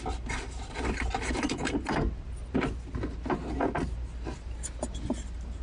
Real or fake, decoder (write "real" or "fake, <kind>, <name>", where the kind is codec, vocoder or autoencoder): fake, vocoder, BigVGAN v2